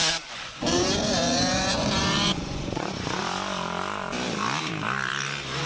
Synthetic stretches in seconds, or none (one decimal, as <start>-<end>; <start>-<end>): 0.0-3.2